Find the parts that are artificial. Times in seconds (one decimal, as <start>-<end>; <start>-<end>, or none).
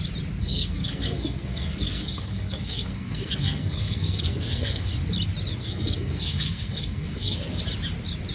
0.4-4.9; 5.6-7.6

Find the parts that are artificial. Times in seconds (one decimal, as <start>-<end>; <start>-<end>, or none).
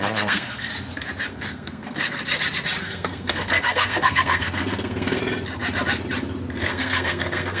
0.0-0.7; 1.3-2.2; 2.8-5.2; 6.6-7.6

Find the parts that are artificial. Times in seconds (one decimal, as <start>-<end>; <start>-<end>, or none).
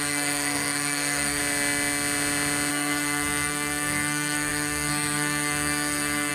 0.0-1.4; 2.7-6.3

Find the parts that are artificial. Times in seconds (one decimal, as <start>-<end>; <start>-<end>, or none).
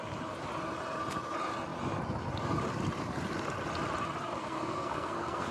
4.4-5.5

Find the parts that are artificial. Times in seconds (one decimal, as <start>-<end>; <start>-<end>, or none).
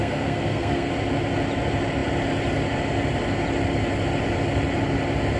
0.0-0.9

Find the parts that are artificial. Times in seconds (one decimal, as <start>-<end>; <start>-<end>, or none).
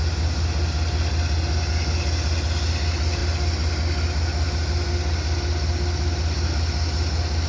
none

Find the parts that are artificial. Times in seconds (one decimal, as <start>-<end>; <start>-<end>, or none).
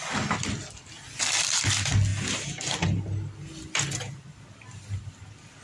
none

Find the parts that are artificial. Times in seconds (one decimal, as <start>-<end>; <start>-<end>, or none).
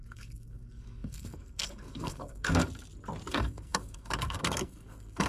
0.0-2.6; 3.3-5.3